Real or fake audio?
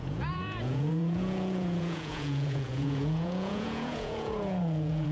fake